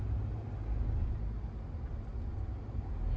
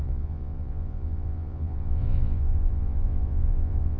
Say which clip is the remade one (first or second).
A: second